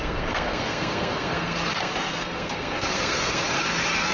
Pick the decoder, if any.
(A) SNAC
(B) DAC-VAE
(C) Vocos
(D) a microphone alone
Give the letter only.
A